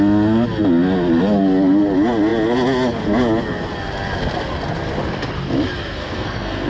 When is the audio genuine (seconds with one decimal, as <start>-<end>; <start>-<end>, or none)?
0.0-6.0